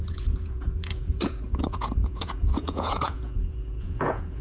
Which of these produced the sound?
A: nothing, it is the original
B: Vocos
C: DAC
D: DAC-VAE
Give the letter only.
B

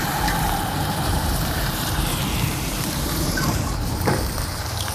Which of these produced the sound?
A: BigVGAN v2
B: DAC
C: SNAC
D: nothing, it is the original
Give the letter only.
A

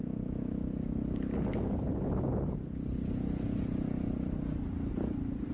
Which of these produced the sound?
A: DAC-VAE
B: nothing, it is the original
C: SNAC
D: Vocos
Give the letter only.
B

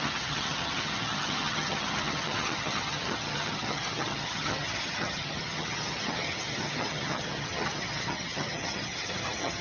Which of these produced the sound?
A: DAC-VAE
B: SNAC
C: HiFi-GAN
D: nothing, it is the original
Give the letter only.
C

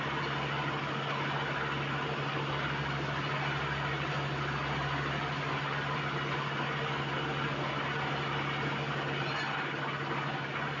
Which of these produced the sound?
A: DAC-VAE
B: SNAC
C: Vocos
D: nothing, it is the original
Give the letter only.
D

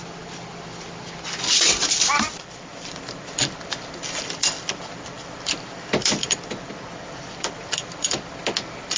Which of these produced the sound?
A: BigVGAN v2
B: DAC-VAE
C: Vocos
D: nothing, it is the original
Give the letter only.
A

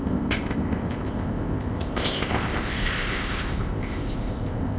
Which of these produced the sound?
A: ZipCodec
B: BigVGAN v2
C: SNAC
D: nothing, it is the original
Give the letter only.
A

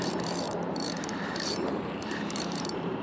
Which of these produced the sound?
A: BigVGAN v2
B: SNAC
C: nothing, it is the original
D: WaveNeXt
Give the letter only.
A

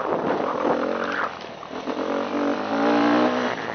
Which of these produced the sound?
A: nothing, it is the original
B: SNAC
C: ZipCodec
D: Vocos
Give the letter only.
A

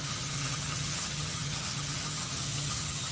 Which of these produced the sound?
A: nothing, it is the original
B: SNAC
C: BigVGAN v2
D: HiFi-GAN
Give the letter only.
D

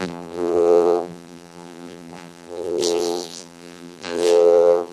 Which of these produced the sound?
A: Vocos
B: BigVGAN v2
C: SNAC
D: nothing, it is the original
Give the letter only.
B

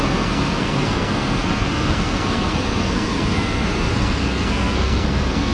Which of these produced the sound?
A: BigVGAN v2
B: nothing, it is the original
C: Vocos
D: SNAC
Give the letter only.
D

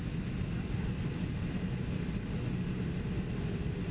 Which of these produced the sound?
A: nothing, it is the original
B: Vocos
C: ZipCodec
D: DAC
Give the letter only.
A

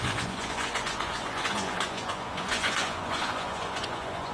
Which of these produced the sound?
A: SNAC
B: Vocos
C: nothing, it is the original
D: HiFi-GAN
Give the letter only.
B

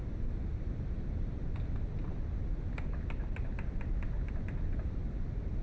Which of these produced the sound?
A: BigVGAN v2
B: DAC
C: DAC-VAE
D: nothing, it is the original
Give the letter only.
D